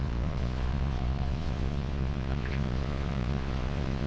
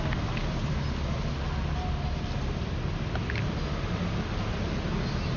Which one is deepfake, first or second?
first